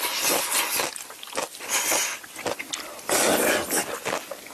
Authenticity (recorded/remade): recorded